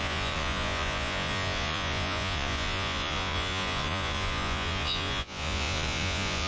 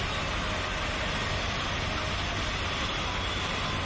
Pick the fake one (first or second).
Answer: first